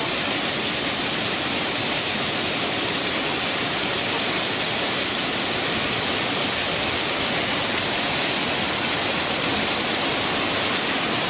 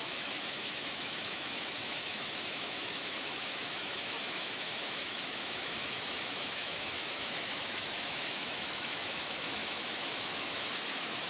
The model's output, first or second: second